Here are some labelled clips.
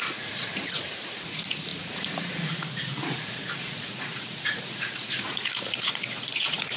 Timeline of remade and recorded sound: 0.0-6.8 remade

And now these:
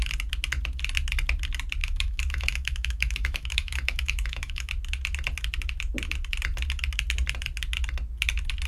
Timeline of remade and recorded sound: 0.0-1.8 recorded; 1.8-4.7 remade; 4.7-8.7 recorded